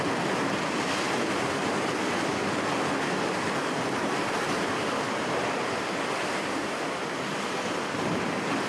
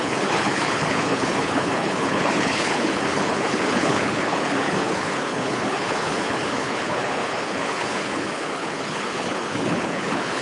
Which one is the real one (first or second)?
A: first